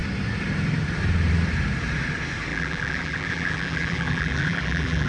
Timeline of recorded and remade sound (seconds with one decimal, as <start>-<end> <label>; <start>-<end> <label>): 0.0-2.5 recorded; 2.5-5.1 remade